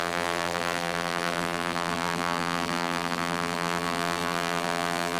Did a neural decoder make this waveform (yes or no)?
yes